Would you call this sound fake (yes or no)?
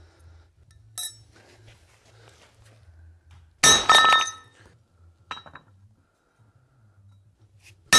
no